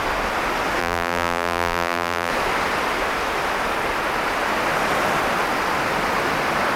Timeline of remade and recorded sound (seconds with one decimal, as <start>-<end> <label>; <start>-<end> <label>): 0.0-0.8 recorded; 0.8-2.3 remade; 2.3-6.8 recorded